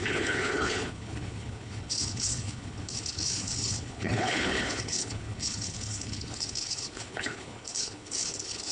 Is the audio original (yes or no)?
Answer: no